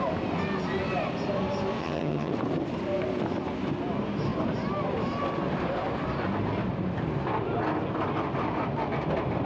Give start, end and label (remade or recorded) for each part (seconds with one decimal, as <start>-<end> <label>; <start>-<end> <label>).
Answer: 0.0-1.8 recorded; 1.8-2.3 remade; 2.3-9.4 recorded